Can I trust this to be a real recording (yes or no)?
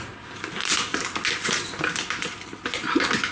yes